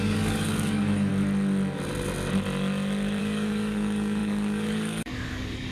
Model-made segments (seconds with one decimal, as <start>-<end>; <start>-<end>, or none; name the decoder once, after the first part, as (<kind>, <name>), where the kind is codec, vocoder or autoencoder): 0.0-1.1 (codec, DAC); 3.2-5.7